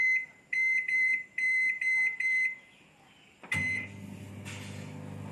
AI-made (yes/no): yes